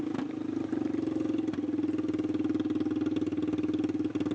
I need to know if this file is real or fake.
real